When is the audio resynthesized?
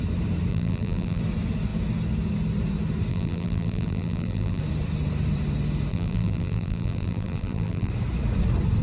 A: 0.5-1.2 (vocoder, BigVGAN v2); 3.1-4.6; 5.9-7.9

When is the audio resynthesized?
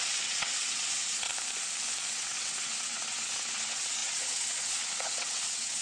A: 0.0-1.3 (vocoder, WaveNeXt); 2.1-5.8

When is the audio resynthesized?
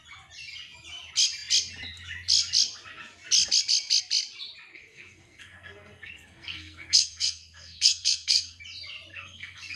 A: 4.7-8.6 (codec, SNAC); 9.1-9.8